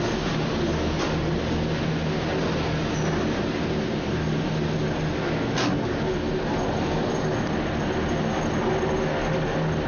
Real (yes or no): yes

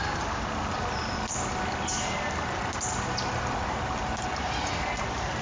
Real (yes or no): yes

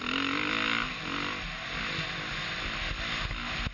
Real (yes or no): yes